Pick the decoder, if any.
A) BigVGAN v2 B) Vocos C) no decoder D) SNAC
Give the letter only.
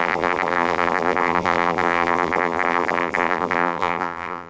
A